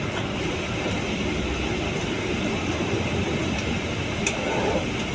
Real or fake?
real